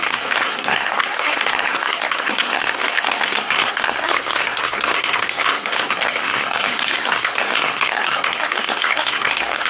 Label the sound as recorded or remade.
remade